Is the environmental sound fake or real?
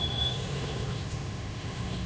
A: fake